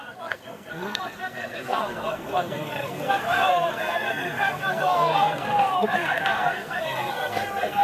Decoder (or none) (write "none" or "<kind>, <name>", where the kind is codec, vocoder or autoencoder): codec, SNAC